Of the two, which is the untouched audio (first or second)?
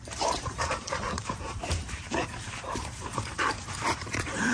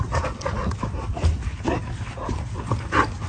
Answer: second